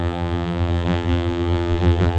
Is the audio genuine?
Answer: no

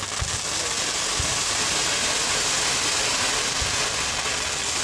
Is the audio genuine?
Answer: yes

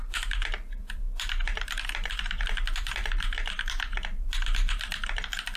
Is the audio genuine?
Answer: no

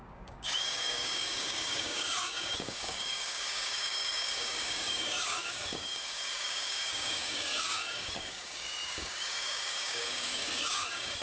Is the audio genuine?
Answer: no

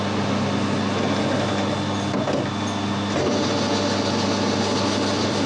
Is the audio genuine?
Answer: yes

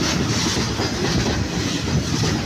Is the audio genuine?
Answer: yes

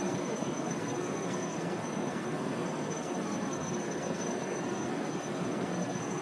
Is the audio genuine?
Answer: no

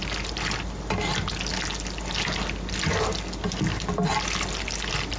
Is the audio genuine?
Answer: yes